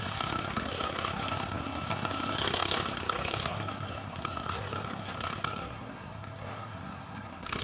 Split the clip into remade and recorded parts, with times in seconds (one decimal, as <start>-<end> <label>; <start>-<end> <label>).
0.0-7.6 remade